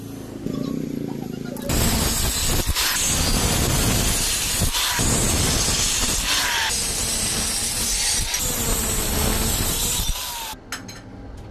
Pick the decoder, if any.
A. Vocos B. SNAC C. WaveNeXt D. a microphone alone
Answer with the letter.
D